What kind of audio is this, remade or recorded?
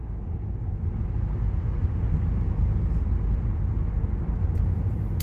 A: recorded